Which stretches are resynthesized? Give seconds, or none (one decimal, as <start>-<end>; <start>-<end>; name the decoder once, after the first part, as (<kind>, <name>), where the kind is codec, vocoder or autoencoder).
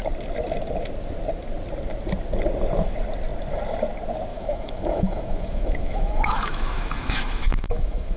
4.3-8.2 (autoencoder, DAC-VAE)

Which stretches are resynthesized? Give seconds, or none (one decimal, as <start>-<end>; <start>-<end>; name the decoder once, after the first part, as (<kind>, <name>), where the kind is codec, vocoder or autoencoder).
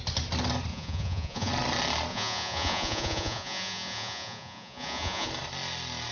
0.7-1.5 (vocoder, Vocos); 2.1-5.3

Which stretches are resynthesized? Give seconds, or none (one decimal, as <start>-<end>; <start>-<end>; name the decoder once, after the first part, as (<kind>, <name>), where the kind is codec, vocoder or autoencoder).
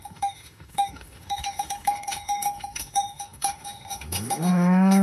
0.0-5.0 (autoencoder, DAC-VAE)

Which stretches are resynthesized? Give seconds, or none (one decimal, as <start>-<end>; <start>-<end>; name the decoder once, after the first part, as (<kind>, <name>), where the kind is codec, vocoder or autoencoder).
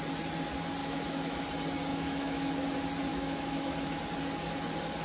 0.8-1.4 (autoencoder, DAC-VAE); 1.9-2.5; 3.1-4.0